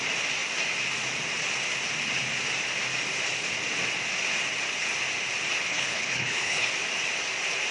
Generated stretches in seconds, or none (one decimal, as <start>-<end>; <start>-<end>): 5.7-6.7